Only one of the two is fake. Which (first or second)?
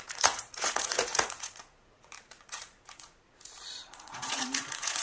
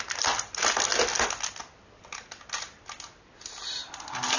first